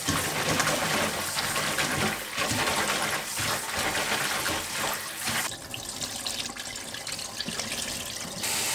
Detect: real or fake real